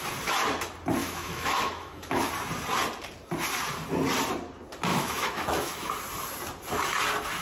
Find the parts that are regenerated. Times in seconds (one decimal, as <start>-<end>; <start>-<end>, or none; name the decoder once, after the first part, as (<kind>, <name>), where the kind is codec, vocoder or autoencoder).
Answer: 1.0-2.3 (autoencoder, DAC-VAE); 4.9-5.9